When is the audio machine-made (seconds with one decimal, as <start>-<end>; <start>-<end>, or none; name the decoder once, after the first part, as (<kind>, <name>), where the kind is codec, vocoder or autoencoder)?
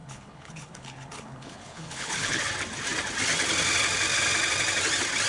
0.0-2.4 (codec, HILCodec)